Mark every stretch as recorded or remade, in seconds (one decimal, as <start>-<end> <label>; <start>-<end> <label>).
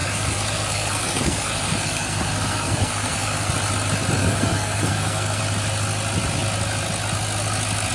0.0-3.5 remade; 3.5-4.2 recorded; 4.2-5.4 remade; 5.4-7.9 recorded